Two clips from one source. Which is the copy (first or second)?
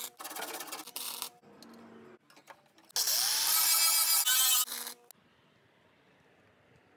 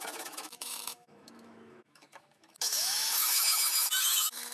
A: second